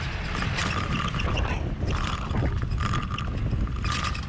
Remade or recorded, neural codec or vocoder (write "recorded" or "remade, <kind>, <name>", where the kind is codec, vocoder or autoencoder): recorded